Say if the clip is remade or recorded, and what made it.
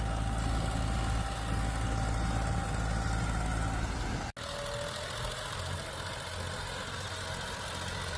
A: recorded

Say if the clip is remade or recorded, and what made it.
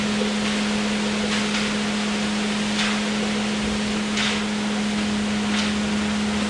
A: recorded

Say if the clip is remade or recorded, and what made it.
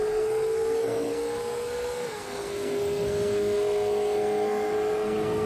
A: remade, codec, SNAC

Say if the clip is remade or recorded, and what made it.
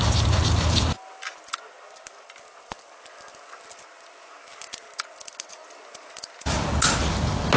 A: recorded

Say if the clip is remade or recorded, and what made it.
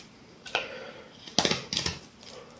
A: recorded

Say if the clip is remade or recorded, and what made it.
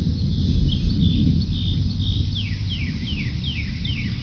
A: recorded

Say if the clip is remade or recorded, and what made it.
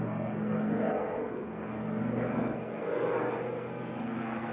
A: remade, codec, SNAC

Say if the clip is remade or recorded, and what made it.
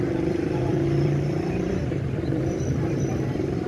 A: remade, vocoder, BigVGAN v2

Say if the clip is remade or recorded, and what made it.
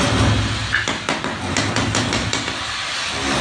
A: recorded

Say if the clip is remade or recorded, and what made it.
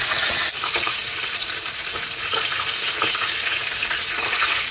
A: remade, vocoder, Vocos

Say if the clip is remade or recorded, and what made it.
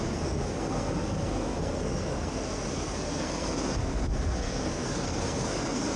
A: remade, codec, SNAC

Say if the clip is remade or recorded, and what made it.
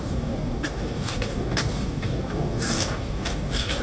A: remade, codec, DAC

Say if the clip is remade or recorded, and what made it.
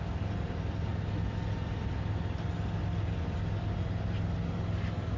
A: recorded